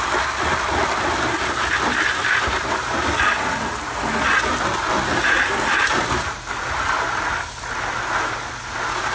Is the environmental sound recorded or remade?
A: recorded